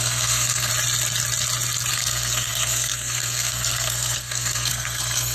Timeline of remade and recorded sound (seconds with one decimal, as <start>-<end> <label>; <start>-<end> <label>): 0.0-0.7 remade; 0.7-1.9 recorded; 1.9-5.3 remade